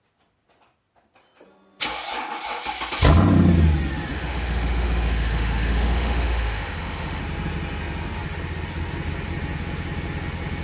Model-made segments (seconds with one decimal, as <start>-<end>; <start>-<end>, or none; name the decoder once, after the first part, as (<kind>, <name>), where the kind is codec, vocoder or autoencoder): 4.1-7.2 (autoencoder, DAC-VAE)